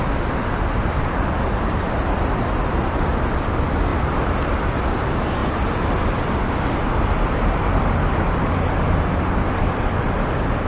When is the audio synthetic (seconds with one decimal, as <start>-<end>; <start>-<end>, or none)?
none